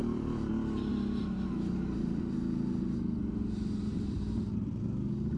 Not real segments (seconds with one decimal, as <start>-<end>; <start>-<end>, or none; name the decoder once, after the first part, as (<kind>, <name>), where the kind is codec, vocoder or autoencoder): 0.0-0.5 (vocoder, BigVGAN v2); 0.9-2.2; 3.9-4.8